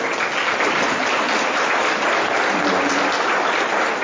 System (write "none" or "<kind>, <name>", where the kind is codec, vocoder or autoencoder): none